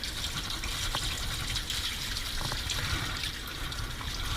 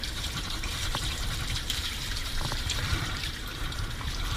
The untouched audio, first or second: first